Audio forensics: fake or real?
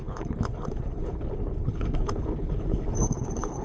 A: fake